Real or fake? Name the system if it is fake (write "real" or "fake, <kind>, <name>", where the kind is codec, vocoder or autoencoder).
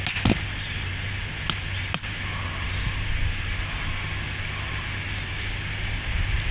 real